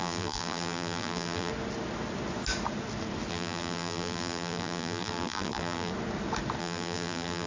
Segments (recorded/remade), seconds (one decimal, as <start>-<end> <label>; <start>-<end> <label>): 0.0-1.5 remade; 1.5-3.3 recorded; 3.3-5.9 remade; 5.9-6.6 recorded; 6.6-7.5 remade